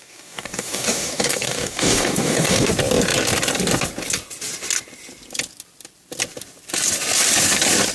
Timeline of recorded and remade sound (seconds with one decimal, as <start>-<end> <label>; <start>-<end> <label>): 0.0-2.7 remade; 2.7-7.9 recorded